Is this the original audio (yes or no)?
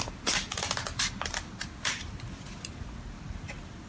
yes